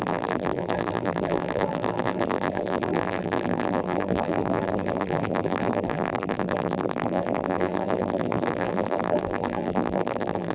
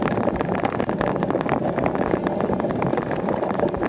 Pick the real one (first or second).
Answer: second